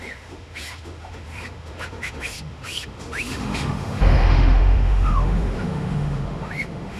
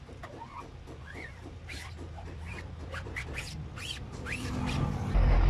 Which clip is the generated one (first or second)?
first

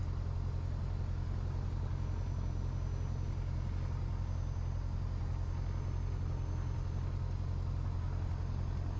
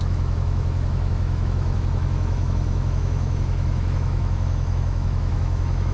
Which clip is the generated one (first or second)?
second